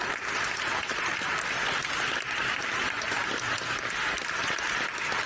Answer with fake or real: real